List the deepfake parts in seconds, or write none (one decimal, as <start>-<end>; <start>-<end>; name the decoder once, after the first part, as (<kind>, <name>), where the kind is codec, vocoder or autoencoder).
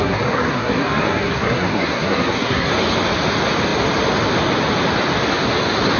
0.0-2.7 (codec, SNAC)